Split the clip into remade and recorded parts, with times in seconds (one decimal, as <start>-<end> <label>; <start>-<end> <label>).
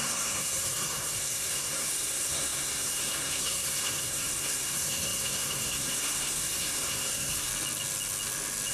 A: 0.0-7.5 remade; 7.5-8.7 recorded